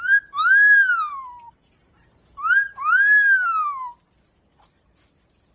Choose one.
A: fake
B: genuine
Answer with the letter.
B